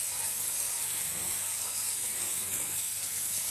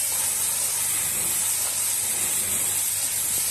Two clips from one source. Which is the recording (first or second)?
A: second